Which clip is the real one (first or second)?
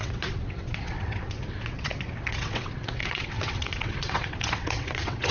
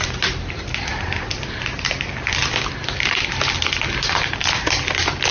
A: second